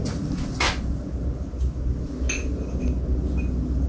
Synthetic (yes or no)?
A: no